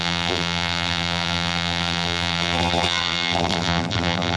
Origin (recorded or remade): remade